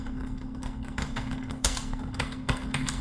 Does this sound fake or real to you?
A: fake